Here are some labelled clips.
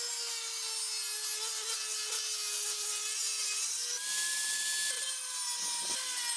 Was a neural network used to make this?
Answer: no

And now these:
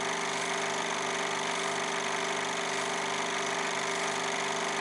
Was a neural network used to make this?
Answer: no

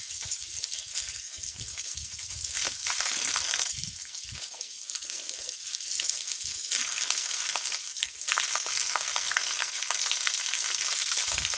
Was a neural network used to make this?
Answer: yes